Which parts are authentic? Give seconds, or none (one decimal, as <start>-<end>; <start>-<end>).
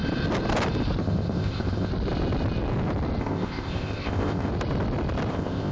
0.0-1.0; 1.9-3.2; 4.5-5.3